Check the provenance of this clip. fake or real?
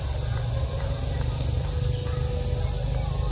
real